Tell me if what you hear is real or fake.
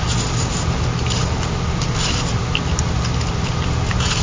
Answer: real